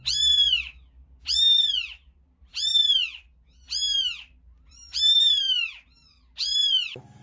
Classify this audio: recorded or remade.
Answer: recorded